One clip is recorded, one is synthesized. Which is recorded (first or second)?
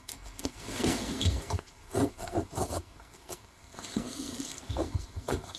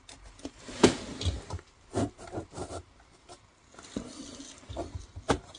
second